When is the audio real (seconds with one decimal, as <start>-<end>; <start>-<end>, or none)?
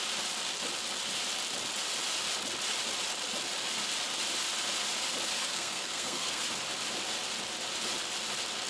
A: 0.0-5.4; 6.4-8.7